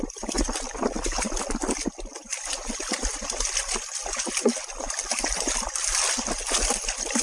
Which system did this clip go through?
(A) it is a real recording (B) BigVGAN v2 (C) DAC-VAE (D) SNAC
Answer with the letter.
B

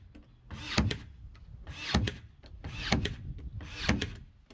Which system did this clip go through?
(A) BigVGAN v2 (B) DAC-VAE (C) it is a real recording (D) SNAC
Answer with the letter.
C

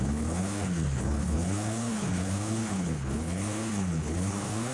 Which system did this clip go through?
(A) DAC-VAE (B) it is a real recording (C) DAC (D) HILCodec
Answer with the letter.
D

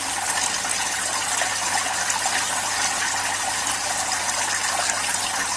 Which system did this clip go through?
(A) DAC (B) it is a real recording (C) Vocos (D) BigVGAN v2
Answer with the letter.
B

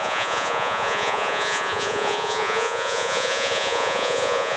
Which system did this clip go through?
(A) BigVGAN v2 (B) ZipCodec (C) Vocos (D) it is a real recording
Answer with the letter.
C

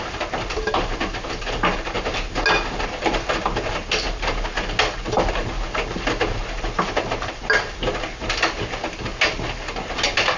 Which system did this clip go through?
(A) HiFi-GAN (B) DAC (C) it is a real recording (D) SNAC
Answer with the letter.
C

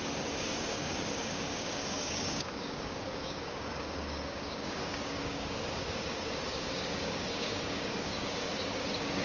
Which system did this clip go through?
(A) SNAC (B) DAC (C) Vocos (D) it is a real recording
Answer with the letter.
B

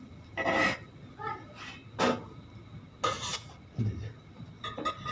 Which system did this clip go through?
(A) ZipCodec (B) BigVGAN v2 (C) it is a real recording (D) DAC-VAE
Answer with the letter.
C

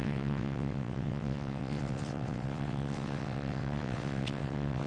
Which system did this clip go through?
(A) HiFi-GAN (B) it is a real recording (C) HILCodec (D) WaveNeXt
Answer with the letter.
D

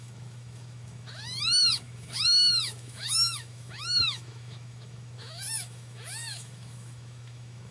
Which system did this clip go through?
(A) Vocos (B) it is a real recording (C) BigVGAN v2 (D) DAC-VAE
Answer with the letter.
D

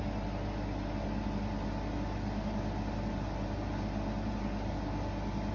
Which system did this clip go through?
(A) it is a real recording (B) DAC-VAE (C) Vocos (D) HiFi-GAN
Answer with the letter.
A